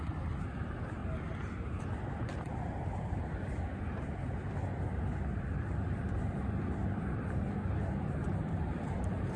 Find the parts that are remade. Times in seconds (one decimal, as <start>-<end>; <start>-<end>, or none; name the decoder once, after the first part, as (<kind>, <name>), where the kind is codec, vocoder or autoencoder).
0.0-1.0 (vocoder, BigVGAN v2); 1.8-9.4